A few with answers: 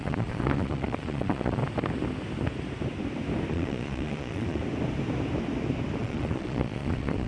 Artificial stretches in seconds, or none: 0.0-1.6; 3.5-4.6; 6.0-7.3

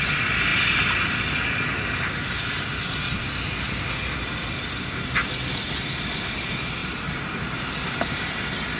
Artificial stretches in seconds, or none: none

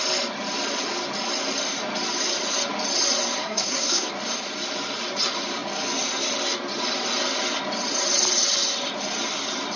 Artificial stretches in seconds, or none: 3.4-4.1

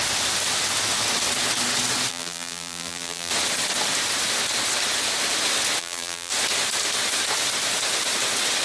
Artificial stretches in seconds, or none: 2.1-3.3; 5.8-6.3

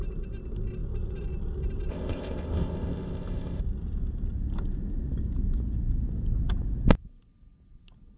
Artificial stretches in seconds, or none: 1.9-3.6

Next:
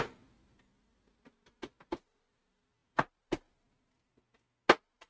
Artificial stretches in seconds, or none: none

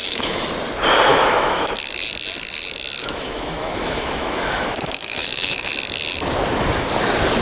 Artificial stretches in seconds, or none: 0.0-0.5; 1.1-1.7; 3.0-5.7

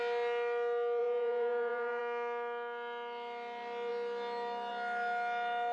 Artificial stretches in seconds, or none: 1.0-2.0